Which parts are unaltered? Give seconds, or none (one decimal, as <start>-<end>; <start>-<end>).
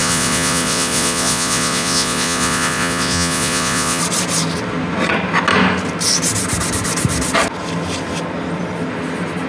4.0-9.5